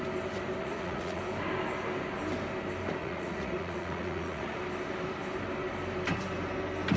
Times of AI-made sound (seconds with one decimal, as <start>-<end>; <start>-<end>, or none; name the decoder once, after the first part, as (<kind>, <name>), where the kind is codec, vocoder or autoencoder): 0.6-1.2 (vocoder, Vocos); 3.0-4.6